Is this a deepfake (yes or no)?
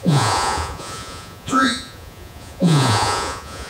yes